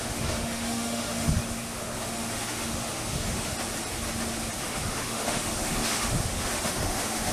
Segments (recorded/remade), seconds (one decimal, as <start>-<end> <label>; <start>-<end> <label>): 0.0-3.5 remade; 3.5-4.6 recorded; 4.6-7.3 remade